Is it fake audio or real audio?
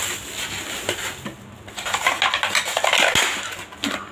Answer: real